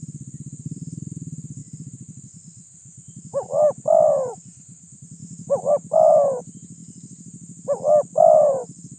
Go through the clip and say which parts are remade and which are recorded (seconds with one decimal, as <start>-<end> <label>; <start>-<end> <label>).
0.0-9.0 recorded